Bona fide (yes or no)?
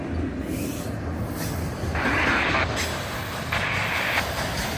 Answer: yes